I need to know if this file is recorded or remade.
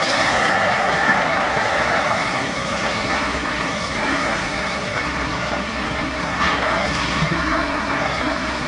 remade